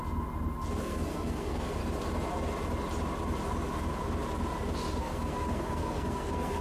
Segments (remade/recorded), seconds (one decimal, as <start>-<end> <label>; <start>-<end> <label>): 0.0-0.8 recorded; 0.8-1.8 remade; 1.8-5.0 recorded; 5.0-6.6 remade